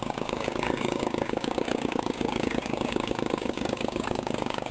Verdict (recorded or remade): remade